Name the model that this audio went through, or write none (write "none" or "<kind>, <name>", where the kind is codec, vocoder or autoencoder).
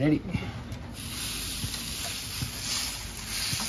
none